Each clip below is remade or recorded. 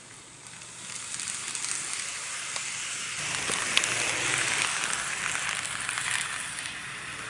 recorded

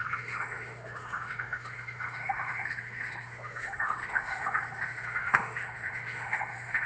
remade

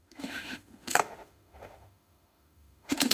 remade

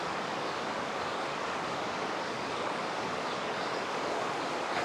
remade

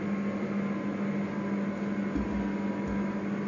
recorded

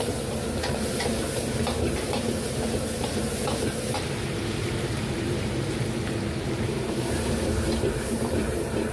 remade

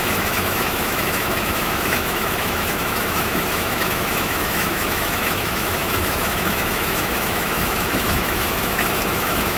remade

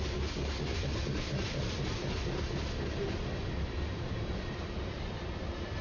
recorded